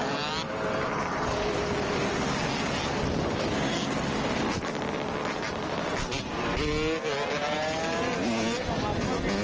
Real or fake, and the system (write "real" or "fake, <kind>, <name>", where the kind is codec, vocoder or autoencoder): real